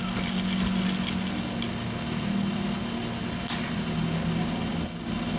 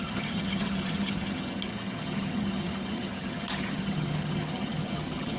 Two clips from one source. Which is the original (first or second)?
first